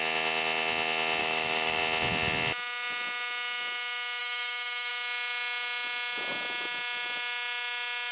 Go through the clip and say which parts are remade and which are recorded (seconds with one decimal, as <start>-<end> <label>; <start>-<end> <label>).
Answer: 0.0-1.2 recorded; 1.2-1.8 remade; 1.8-4.2 recorded; 4.2-4.9 remade; 4.9-8.1 recorded